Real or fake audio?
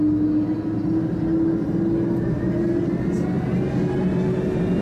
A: real